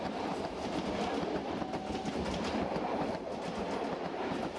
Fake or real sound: real